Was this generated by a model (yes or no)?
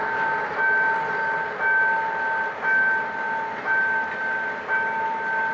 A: no